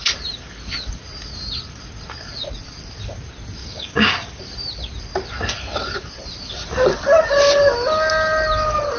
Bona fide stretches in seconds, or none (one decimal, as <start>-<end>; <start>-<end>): 0.0-3.6; 4.4-9.0